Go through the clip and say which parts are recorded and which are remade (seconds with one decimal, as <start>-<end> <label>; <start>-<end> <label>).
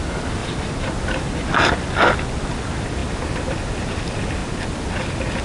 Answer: 0.0-0.4 recorded; 0.4-1.0 remade; 1.0-5.4 recorded